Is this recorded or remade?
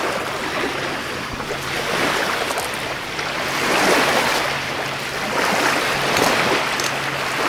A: recorded